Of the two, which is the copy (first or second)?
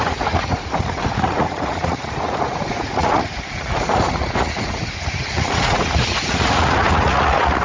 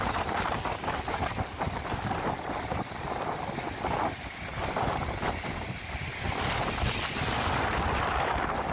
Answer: first